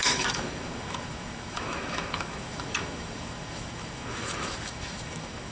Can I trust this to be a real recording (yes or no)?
no